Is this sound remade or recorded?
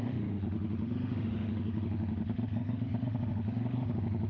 remade